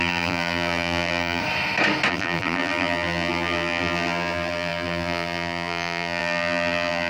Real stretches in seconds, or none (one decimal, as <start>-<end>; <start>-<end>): 1.4-2.1